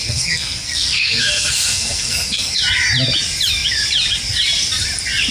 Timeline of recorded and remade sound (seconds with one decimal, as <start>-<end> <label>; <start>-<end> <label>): 0.0-2.6 remade; 2.6-5.3 recorded